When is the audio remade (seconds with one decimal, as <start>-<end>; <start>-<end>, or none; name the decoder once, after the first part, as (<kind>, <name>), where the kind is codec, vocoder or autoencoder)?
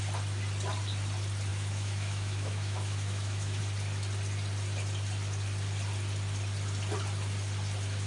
1.5-3.6 (autoencoder, DAC-VAE)